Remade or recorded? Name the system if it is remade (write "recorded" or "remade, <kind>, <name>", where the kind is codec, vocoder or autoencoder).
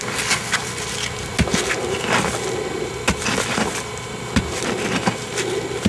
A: recorded